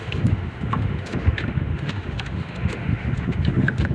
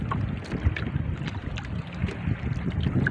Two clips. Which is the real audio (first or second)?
second